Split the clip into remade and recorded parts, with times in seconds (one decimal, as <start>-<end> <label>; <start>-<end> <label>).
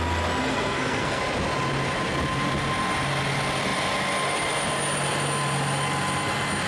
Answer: 0.0-0.4 recorded; 0.4-1.2 remade; 1.2-6.7 recorded